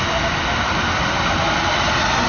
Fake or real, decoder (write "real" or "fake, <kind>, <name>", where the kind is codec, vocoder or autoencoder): real